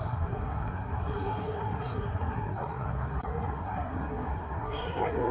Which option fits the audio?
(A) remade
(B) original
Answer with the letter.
A